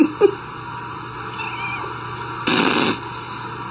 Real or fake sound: real